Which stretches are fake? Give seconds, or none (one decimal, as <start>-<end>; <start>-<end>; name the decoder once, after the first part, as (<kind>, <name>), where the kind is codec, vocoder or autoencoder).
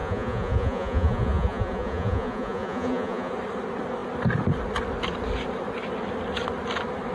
0.0-3.3 (vocoder, Vocos)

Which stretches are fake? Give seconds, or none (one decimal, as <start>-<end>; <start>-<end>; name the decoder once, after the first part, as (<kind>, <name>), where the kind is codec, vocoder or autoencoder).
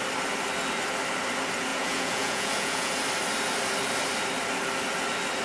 1.7-2.9 (vocoder, Vocos)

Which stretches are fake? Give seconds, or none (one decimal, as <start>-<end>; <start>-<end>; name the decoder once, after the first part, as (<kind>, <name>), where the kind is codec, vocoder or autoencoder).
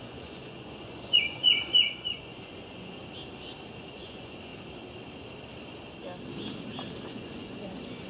0.0-3.0 (vocoder, Vocos); 3.8-4.5; 7.0-8.1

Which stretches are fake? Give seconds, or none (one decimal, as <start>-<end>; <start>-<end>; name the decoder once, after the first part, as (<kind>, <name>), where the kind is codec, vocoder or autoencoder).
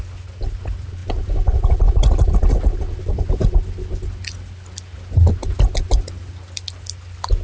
none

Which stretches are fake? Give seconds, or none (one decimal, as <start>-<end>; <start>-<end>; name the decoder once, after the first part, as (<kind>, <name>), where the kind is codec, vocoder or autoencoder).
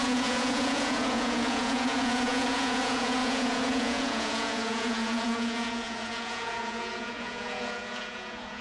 0.0-8.6 (vocoder, Vocos)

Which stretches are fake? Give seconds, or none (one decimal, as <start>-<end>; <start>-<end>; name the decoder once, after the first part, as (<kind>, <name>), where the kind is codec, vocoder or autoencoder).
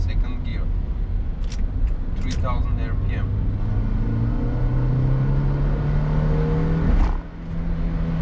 none